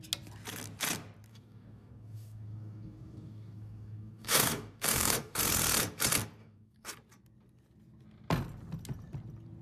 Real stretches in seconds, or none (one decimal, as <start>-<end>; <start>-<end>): 0.0-1.3; 5.4-6.4; 6.9-9.6